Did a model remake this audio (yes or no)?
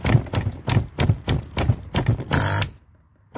no